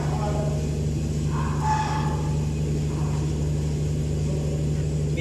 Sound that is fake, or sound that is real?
real